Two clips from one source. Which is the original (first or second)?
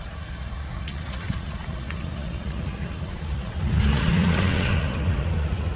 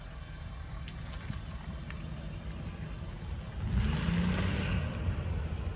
second